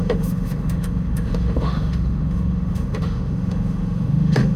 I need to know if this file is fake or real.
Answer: fake